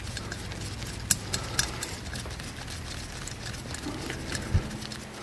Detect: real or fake real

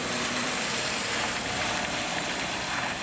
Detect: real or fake fake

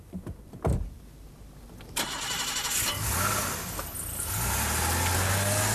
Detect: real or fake real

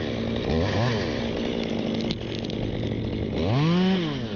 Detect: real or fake real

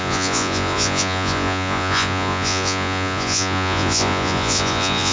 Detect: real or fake fake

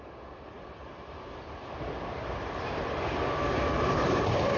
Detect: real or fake real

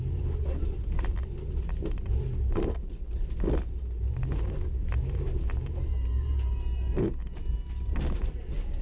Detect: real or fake real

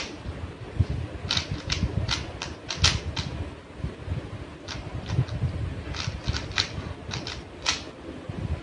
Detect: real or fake real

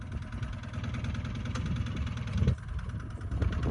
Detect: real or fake real